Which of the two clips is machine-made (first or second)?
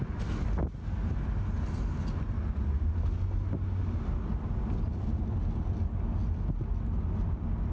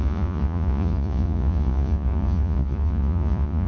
second